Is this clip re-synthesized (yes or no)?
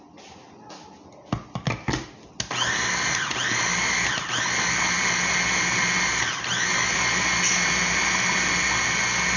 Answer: no